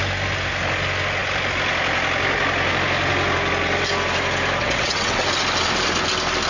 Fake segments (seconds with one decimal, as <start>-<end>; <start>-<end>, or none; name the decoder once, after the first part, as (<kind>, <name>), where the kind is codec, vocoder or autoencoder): 4.6-5.2 (vocoder, WaveNeXt)

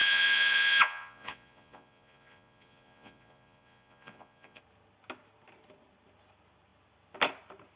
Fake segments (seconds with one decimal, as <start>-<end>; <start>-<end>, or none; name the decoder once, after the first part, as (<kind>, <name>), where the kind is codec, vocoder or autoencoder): 0.0-4.6 (vocoder, Vocos)

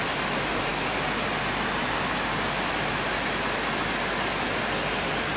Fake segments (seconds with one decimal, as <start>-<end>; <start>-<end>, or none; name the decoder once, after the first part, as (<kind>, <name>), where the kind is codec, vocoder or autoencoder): none

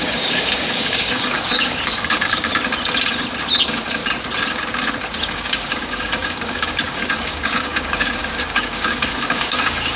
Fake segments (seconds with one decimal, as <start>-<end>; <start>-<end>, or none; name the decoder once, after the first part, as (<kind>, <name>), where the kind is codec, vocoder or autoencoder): 0.0-2.5 (codec, DAC); 3.6-4.0; 5.2-10.0

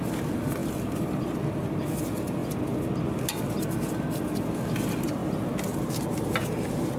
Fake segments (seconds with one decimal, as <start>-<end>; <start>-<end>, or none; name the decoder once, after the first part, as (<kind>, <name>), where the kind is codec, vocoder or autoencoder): 0.6-1.5 (vocoder, BigVGAN v2)

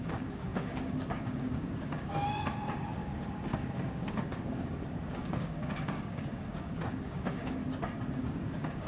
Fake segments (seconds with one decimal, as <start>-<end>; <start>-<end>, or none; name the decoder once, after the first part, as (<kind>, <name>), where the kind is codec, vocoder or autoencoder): 0.0-7.6 (codec, DAC); 8.2-8.9

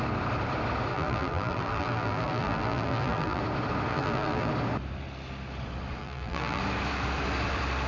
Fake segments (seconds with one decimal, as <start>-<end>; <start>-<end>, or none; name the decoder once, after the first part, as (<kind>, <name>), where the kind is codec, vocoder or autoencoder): 0.9-3.4 (vocoder, BigVGAN v2); 3.9-4.5; 6.0-6.6